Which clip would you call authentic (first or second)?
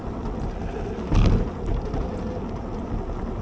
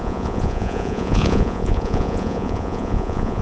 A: first